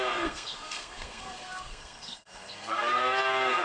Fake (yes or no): yes